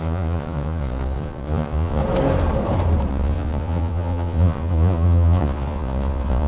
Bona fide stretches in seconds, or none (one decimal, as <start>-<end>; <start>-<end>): 2.0-3.1